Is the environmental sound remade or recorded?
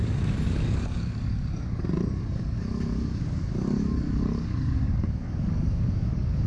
remade